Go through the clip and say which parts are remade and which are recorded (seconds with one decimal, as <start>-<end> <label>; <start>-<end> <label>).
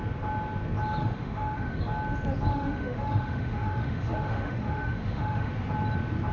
0.0-1.0 recorded; 1.0-1.8 remade; 1.8-2.5 recorded; 2.5-5.5 remade; 5.5-6.3 recorded